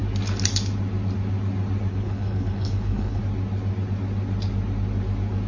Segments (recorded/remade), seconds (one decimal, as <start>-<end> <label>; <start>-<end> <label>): 0.0-1.9 recorded; 1.9-3.2 remade; 3.2-5.5 recorded